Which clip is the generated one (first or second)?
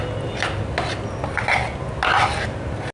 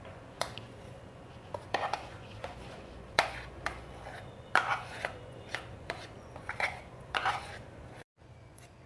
second